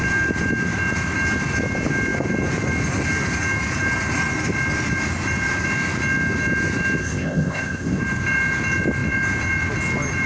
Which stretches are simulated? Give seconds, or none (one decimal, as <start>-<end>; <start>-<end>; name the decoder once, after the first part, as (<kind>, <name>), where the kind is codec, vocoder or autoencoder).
7.0-8.0 (codec, ZipCodec)